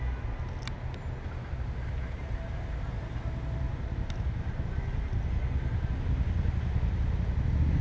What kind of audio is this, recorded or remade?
recorded